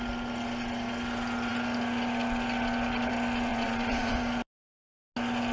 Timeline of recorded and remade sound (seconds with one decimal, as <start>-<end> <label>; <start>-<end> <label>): 0.0-3.5 recorded; 3.5-4.2 remade; 4.2-5.5 recorded